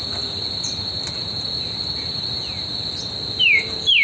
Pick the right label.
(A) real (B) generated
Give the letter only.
A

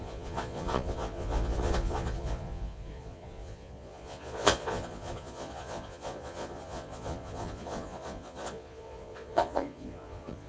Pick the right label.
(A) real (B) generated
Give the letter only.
B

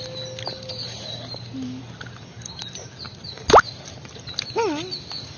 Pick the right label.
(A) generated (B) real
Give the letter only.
B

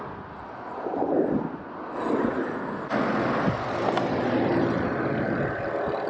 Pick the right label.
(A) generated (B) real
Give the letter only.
B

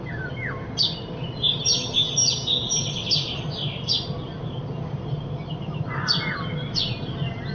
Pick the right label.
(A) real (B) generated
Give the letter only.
A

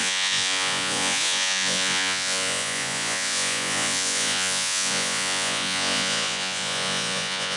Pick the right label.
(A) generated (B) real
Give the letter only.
A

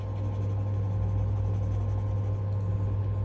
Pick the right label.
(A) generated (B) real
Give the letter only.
B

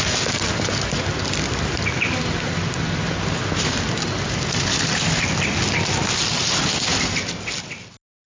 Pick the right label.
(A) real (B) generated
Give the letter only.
A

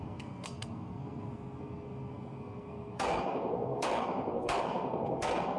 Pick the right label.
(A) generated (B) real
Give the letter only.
A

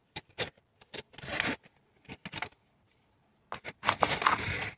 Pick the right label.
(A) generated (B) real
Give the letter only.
B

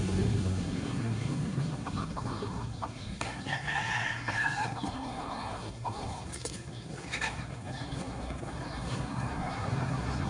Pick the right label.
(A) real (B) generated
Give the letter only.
B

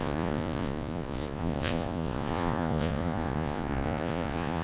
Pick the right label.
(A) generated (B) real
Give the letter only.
A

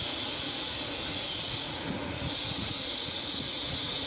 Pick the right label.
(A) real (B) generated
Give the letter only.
B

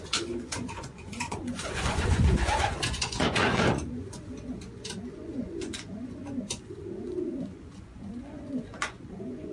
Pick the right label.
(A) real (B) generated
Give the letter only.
B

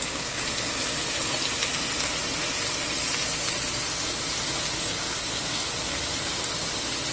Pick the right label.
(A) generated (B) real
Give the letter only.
B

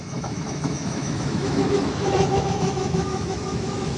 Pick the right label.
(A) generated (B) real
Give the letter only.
A